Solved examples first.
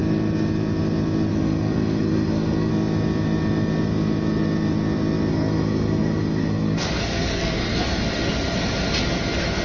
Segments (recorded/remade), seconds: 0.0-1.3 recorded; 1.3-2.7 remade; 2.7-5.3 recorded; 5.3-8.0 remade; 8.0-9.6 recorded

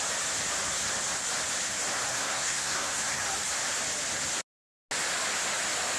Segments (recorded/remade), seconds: 0.0-2.1 recorded; 2.1-3.2 remade; 3.2-6.0 recorded

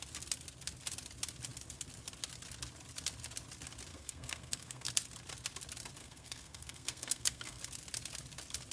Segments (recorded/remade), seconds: 0.0-3.9 recorded; 3.9-4.9 remade; 4.9-6.0 recorded; 6.0-7.6 remade; 7.6-8.7 recorded

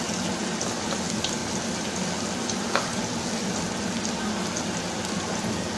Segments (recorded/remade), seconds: 0.0-5.8 recorded

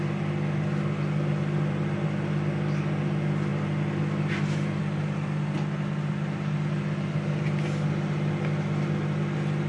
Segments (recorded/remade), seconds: 0.0-9.7 recorded